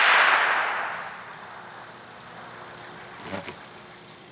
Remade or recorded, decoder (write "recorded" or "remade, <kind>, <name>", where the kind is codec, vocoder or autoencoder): recorded